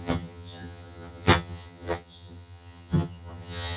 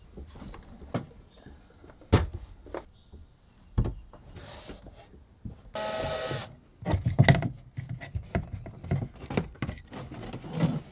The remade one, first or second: first